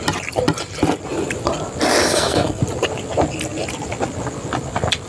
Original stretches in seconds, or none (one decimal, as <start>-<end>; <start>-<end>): 0.0-2.0; 2.6-5.1